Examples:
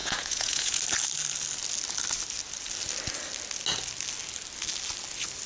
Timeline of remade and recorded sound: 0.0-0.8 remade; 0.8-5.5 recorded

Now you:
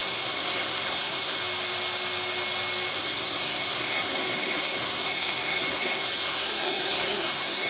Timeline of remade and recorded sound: 0.0-1.4 remade; 1.4-2.9 recorded; 2.9-7.7 remade

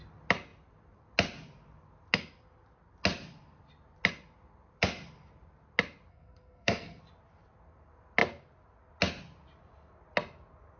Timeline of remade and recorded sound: 0.0-6.1 recorded; 6.1-7.0 remade; 7.0-10.8 recorded